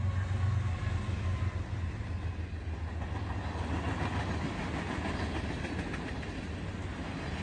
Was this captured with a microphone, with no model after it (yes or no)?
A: yes